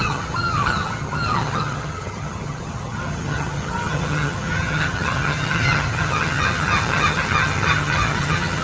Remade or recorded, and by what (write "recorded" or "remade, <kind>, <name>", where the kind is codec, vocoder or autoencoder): remade, vocoder, HiFi-GAN